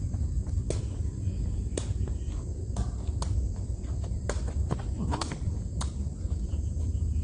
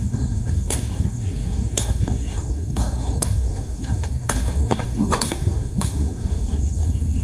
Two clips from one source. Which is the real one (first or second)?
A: first